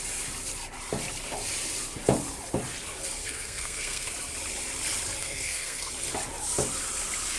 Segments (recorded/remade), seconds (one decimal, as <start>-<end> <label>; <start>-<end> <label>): 0.0-3.2 recorded; 3.2-4.1 remade; 4.1-5.2 recorded; 5.2-5.9 remade; 5.9-7.4 recorded